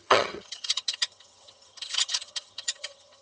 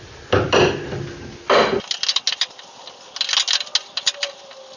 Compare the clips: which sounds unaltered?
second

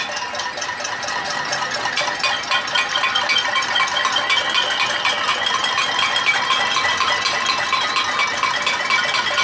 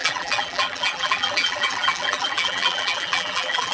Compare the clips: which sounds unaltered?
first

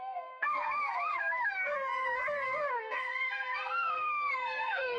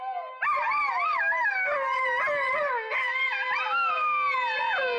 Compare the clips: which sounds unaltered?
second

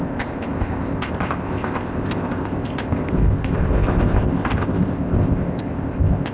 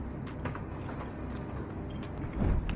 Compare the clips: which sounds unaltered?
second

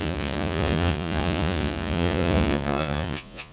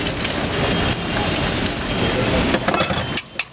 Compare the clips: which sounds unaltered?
second